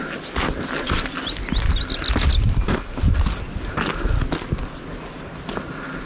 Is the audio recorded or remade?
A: recorded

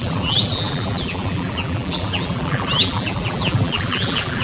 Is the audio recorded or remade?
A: remade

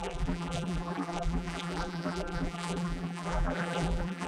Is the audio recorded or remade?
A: remade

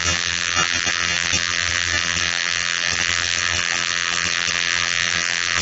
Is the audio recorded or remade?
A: remade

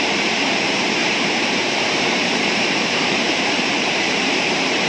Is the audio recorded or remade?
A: remade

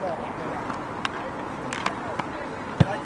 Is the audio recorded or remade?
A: recorded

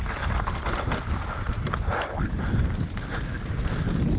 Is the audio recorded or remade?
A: recorded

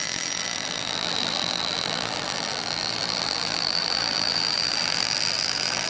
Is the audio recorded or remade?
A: remade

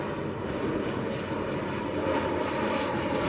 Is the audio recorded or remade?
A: recorded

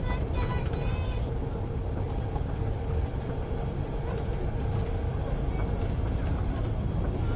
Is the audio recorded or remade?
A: recorded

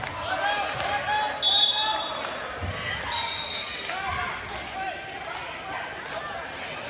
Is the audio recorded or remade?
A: recorded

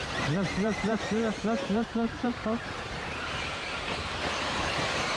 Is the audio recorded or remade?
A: remade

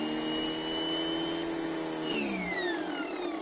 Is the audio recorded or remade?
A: recorded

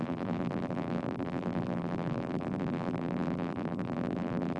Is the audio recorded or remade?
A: remade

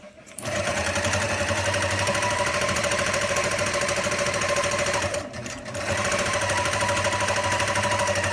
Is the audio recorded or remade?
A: remade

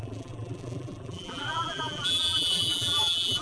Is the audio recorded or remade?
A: remade